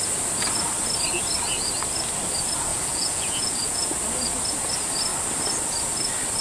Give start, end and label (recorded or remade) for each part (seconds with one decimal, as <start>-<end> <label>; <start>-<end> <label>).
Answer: 0.0-2.7 recorded; 2.7-3.9 remade; 3.9-6.4 recorded